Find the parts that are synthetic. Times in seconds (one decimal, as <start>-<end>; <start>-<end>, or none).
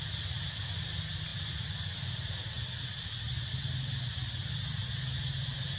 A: none